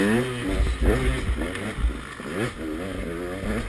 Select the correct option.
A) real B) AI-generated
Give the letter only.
A